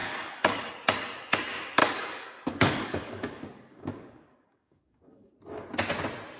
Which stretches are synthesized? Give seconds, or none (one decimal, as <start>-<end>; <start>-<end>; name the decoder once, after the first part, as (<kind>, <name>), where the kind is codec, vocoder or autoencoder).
0.0-0.7 (codec, DAC); 1.8-5.3